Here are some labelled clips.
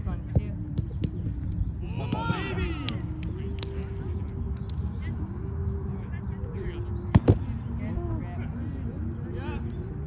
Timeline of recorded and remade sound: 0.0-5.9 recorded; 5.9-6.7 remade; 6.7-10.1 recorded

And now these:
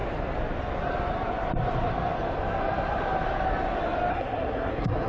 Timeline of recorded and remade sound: 0.0-4.1 recorded; 4.1-5.1 remade

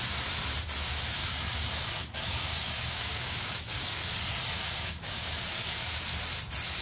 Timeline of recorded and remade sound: 0.0-1.2 recorded; 1.2-4.1 remade; 4.1-4.6 recorded; 4.6-6.1 remade; 6.1-6.8 recorded